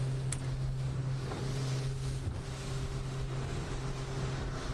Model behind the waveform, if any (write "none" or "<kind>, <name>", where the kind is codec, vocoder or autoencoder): none